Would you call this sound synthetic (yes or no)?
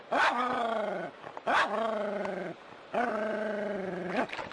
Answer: no